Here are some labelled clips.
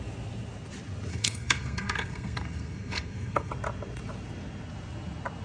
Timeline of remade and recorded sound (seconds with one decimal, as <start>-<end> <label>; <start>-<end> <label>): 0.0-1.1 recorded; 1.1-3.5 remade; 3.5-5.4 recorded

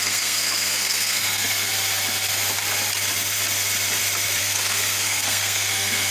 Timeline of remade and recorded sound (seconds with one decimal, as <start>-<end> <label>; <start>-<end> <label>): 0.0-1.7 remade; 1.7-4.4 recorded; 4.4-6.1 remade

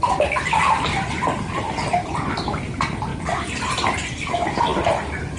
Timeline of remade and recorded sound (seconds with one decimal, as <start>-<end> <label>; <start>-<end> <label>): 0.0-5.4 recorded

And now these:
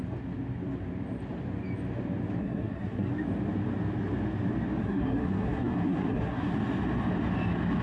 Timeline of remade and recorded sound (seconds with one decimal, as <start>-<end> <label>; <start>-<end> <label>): 0.0-2.4 recorded; 2.4-3.1 remade; 3.1-4.8 recorded; 4.8-6.6 remade; 6.6-7.8 recorded